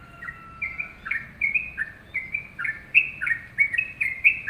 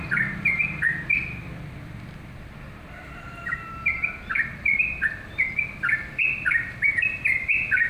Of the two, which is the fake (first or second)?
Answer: second